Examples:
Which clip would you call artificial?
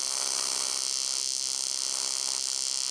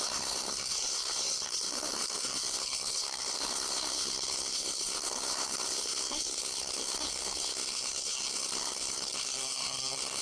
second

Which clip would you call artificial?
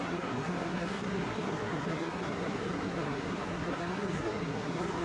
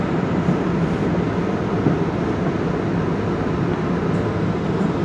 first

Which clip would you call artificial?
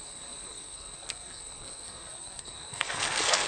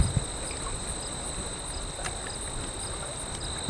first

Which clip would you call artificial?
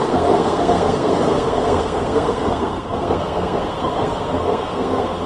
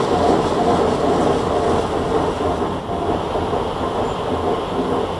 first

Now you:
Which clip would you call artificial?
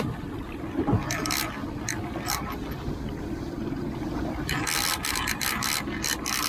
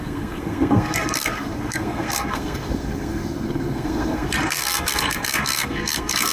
second